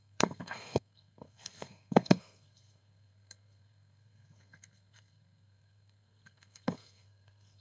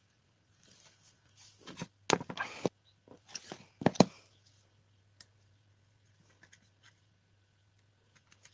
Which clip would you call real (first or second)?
second